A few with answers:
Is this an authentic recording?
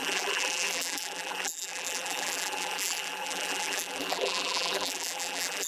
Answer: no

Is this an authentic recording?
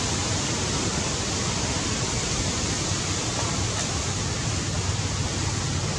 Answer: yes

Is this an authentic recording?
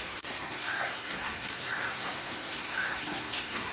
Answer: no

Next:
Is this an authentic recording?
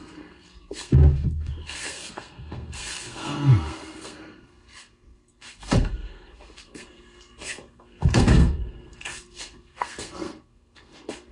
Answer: no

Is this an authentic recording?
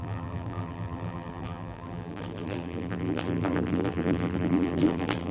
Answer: no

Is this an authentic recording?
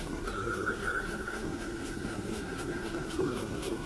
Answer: no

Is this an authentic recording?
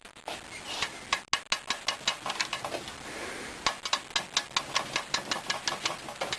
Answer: yes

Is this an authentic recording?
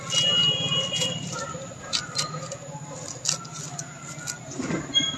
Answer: yes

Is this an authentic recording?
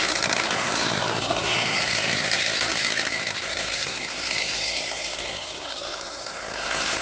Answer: no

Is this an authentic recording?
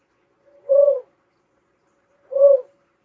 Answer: no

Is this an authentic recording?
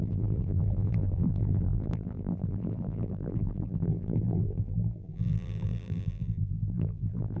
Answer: no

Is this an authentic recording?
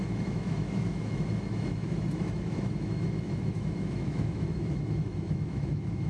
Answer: no